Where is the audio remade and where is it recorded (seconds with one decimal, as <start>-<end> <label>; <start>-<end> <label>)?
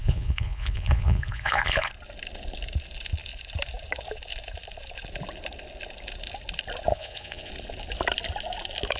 0.0-1.9 remade; 1.9-6.9 recorded; 6.9-7.5 remade; 7.5-9.0 recorded